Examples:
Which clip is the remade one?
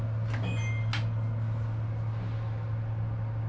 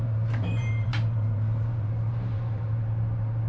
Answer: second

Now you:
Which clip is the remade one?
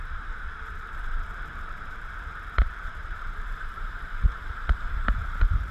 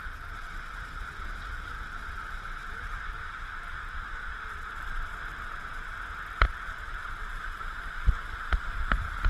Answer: first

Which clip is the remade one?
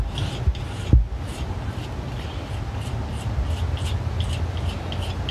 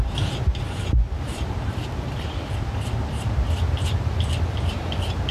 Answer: second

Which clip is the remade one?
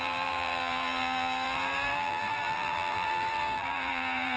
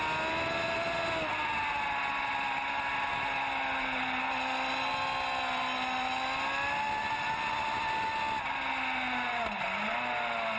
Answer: first